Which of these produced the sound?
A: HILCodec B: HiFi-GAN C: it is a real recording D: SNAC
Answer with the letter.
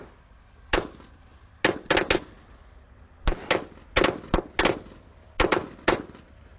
C